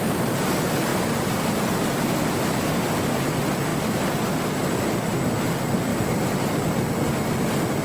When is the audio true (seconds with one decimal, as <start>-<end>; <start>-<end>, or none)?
0.0-0.9; 1.6-3.7; 4.7-5.9; 6.5-7.8